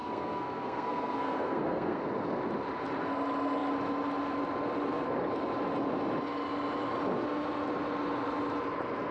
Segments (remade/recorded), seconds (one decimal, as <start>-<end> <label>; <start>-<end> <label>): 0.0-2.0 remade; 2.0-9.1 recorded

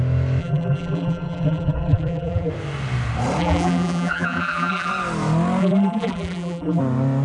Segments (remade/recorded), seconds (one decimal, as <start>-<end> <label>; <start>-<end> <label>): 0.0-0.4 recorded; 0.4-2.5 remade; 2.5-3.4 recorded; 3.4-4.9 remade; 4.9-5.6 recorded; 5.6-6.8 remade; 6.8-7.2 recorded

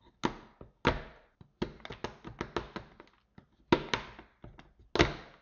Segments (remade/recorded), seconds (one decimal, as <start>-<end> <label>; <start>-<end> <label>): 0.0-5.4 recorded